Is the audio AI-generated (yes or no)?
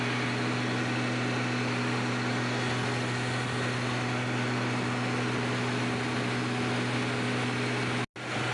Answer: no